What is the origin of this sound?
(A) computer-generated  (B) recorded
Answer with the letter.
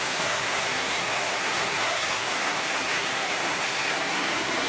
A